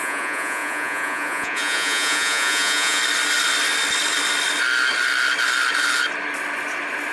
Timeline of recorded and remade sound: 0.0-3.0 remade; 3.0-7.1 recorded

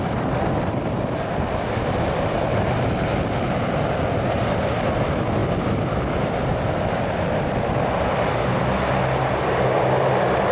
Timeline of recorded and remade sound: 0.0-10.5 recorded

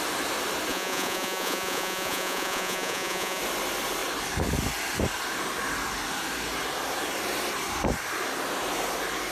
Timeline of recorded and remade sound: 0.0-0.7 recorded; 0.7-3.4 remade; 3.4-9.3 recorded